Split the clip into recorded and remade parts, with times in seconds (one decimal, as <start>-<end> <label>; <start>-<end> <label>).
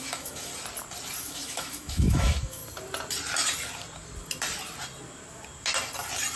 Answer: 0.0-0.5 remade; 0.5-1.2 recorded; 1.2-2.6 remade; 2.6-6.4 recorded